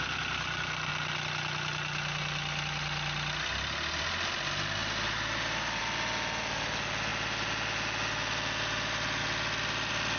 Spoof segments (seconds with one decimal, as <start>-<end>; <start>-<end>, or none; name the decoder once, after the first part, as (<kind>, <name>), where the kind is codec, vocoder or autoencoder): none